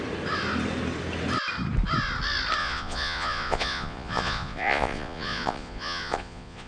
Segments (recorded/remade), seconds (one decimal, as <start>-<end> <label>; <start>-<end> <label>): 0.0-2.6 recorded; 2.6-6.7 remade

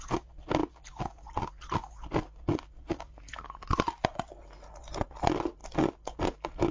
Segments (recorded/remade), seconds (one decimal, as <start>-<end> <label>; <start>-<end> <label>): 0.0-6.7 recorded

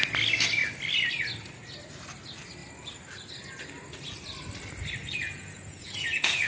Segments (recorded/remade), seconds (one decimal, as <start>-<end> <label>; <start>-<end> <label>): 0.0-5.0 recorded; 5.0-6.5 remade

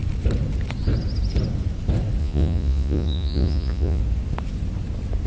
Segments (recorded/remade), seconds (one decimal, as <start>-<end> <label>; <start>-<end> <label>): 0.0-2.2 recorded; 2.2-4.0 remade; 4.0-5.3 recorded

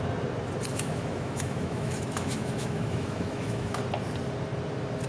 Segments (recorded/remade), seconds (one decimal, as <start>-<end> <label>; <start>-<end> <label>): 0.0-0.7 recorded; 0.7-3.8 remade; 3.8-5.1 recorded